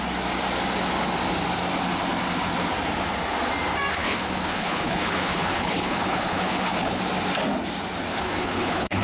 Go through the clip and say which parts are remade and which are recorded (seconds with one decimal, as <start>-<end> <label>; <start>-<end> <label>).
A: 0.0-3.9 recorded; 3.9-7.0 remade; 7.0-8.1 recorded; 8.1-9.0 remade